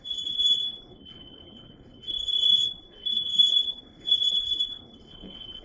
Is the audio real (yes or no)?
no